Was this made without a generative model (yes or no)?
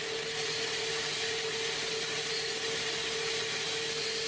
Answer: yes